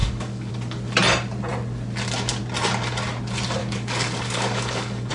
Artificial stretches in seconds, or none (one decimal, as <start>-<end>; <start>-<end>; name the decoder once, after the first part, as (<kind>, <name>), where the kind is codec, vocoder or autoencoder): 0.0-0.5 (codec, DAC); 3.6-5.1